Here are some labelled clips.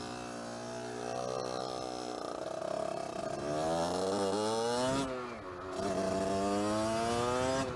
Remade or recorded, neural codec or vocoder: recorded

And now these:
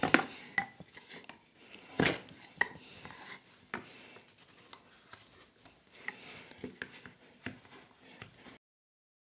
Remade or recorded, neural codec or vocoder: recorded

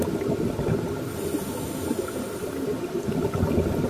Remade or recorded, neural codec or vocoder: recorded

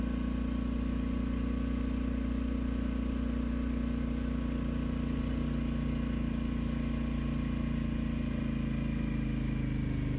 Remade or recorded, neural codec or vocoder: recorded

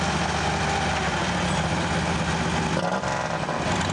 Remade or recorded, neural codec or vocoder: recorded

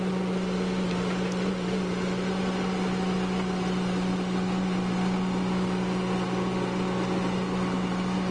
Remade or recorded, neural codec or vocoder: recorded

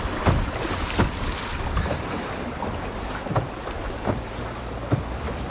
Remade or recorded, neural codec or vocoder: remade, vocoder, BigVGAN v2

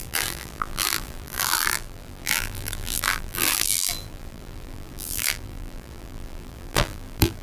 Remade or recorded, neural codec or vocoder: remade, vocoder, BigVGAN v2